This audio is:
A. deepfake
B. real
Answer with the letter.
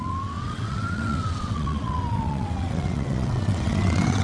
A